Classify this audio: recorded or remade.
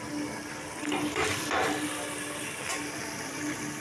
recorded